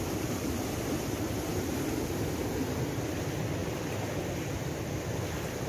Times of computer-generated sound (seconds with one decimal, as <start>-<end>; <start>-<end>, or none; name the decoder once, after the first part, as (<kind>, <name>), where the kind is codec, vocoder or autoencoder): none